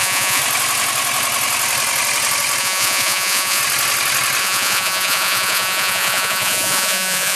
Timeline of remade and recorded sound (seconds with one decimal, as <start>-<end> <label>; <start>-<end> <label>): 0.0-0.4 remade; 0.4-2.6 recorded; 2.6-3.6 remade; 3.6-4.4 recorded; 4.4-7.4 remade

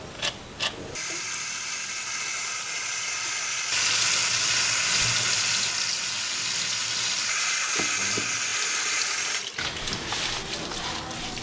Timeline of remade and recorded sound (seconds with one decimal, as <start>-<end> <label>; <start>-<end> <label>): 0.0-11.4 recorded

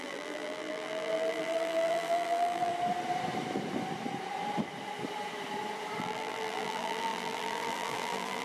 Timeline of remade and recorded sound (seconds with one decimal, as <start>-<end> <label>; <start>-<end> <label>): 0.0-2.7 remade; 2.7-6.0 recorded; 6.0-8.4 remade

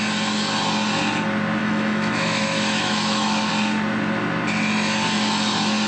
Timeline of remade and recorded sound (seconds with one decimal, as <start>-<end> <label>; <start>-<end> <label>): 0.0-1.6 recorded; 1.6-3.5 remade; 3.5-5.9 recorded

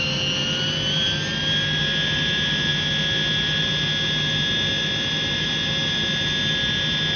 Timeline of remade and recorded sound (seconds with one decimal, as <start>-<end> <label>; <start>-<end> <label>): 0.0-7.2 recorded

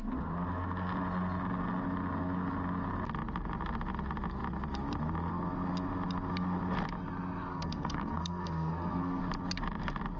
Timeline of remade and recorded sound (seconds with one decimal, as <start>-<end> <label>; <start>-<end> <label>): 0.0-7.5 recorded; 7.5-9.2 remade; 9.2-10.2 recorded